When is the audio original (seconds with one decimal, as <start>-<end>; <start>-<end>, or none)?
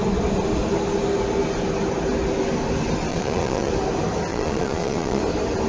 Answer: 0.0-3.1; 3.7-4.3; 5.2-5.7